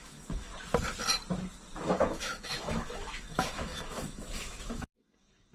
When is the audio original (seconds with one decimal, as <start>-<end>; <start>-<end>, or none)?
0.5-1.9

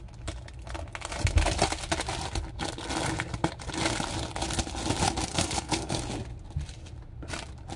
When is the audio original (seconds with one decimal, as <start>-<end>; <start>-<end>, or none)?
0.0-5.3; 6.0-7.8

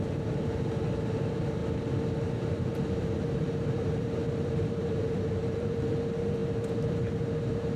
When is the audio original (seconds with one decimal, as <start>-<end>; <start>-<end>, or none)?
1.6-2.2